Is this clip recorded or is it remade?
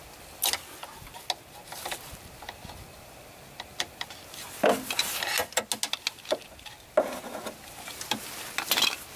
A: recorded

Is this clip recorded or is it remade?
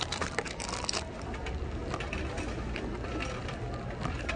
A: recorded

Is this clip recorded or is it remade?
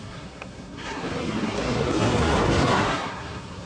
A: remade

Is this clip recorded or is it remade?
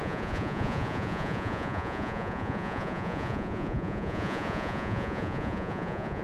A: remade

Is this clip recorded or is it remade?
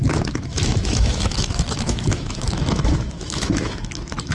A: remade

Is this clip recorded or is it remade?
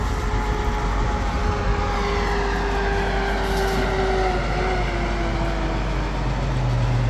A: recorded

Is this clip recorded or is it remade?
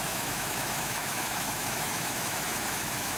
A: remade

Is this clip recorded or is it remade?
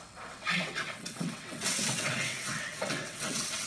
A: remade